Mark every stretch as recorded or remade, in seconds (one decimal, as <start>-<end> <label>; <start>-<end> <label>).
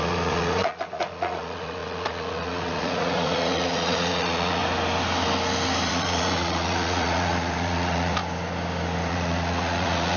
0.0-4.6 remade; 4.6-5.9 recorded; 5.9-8.2 remade; 8.2-9.1 recorded; 9.1-10.2 remade